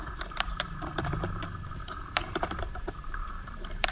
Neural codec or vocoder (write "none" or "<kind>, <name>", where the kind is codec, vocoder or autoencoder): vocoder, BigVGAN v2